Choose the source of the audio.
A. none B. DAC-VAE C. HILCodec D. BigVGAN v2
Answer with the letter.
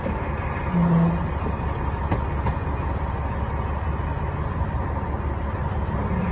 A